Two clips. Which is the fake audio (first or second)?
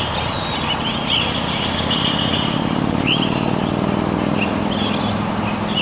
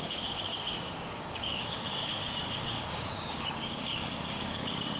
second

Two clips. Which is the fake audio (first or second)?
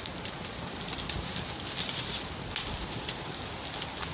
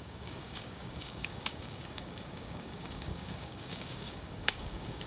second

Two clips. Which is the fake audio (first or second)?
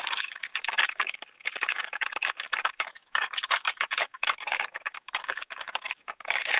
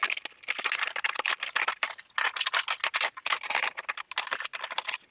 first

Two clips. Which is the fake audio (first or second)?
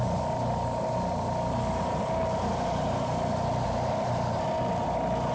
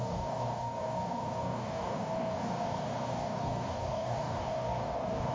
second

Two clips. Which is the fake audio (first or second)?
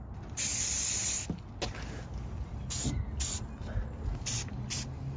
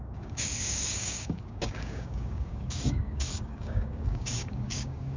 second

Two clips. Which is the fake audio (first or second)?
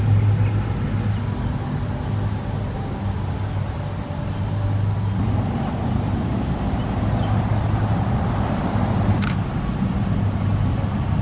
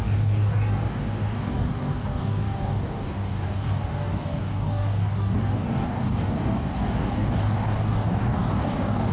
second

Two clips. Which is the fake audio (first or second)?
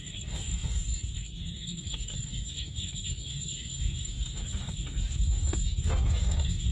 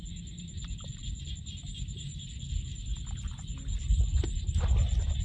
first